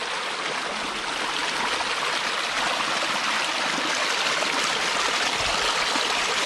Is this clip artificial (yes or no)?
no